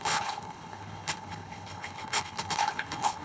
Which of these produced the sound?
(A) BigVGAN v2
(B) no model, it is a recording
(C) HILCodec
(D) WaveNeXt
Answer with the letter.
C